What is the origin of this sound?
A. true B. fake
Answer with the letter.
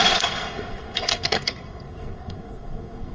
B